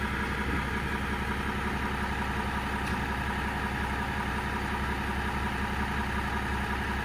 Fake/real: real